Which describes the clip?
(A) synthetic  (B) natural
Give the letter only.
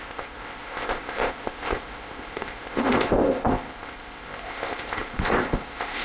A